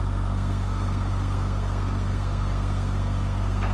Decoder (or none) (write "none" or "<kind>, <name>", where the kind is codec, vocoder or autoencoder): codec, SNAC